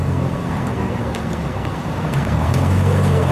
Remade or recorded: remade